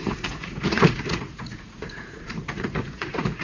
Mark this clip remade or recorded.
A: remade